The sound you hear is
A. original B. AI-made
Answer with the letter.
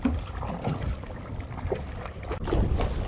A